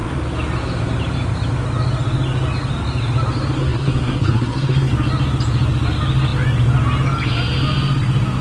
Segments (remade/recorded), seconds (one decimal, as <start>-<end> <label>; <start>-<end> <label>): 0.0-3.6 recorded; 3.6-4.9 remade; 4.9-8.4 recorded